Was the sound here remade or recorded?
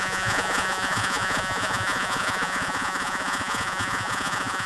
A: remade